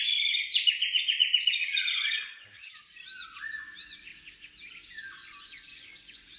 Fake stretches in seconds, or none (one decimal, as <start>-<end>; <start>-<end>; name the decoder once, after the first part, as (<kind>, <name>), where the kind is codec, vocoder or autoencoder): 0.5-2.7 (vocoder, Vocos); 5.2-6.4